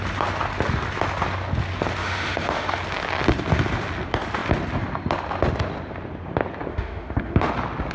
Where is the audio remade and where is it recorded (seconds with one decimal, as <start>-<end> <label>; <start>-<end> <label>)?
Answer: 0.0-2.0 recorded; 2.0-2.8 remade; 2.8-6.7 recorded; 6.7-7.5 remade; 7.5-7.9 recorded